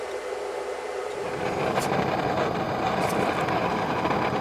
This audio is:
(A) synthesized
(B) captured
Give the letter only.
B